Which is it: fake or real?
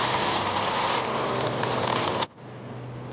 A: real